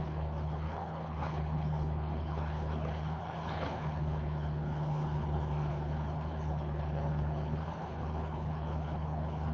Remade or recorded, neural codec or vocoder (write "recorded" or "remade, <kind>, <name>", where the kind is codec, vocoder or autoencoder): remade, codec, HILCodec